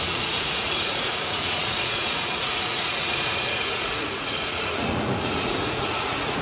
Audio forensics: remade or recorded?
remade